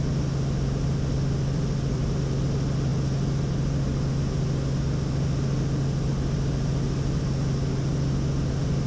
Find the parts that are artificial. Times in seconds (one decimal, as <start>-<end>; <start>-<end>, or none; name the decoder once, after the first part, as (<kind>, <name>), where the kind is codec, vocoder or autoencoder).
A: none